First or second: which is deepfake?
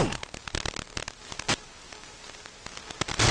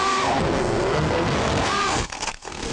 second